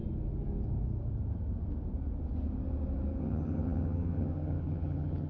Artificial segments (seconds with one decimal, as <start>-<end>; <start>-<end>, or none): 3.2-5.3